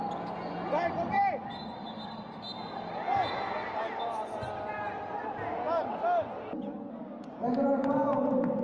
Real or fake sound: real